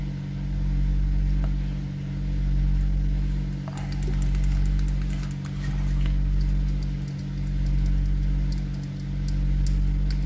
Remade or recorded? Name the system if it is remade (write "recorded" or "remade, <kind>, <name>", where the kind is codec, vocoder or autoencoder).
recorded